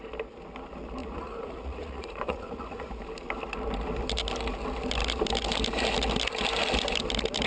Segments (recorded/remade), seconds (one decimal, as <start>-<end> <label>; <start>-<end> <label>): 0.0-1.0 recorded; 1.0-2.9 remade; 2.9-7.5 recorded